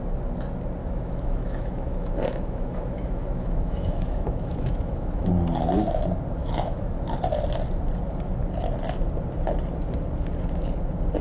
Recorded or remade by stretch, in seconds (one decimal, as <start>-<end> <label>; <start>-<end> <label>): 0.0-0.8 recorded; 0.8-5.3 remade; 5.3-6.4 recorded; 6.4-6.9 remade; 6.9-11.2 recorded

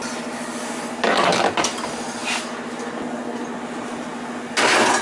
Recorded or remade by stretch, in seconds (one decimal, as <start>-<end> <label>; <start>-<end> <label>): 0.0-5.0 recorded

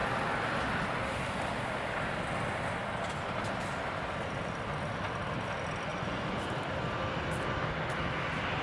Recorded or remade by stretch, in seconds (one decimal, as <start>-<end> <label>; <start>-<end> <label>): 0.0-5.9 recorded; 5.9-6.5 remade; 6.5-8.6 recorded